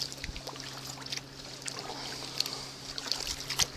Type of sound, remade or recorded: recorded